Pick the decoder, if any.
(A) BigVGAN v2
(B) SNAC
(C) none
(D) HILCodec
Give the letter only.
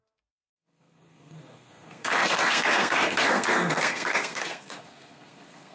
B